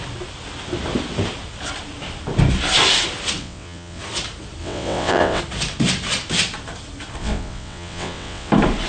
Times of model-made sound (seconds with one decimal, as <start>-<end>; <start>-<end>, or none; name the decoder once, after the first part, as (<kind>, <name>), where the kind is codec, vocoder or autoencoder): 3.4-4.0 (vocoder, WaveNeXt); 4.6-5.4; 7.2-8.5